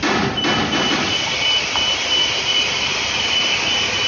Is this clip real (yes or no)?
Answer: yes